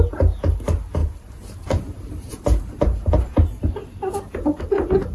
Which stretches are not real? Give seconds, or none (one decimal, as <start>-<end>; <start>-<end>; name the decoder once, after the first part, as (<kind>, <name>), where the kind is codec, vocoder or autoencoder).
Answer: 1.0-4.1 (vocoder, BigVGAN v2)